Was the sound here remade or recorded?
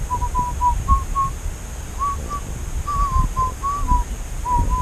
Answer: recorded